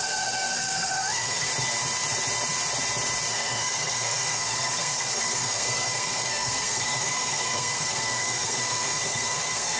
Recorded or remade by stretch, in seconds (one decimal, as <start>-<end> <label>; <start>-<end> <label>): 0.0-1.5 remade; 1.5-3.3 recorded; 3.3-9.8 remade